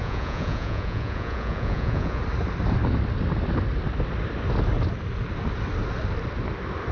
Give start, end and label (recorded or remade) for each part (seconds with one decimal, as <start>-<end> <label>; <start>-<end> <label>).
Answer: 0.0-2.2 remade; 2.2-6.9 recorded